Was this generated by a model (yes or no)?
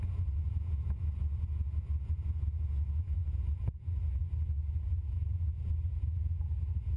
yes